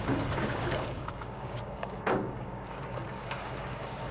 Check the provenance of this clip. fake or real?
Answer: fake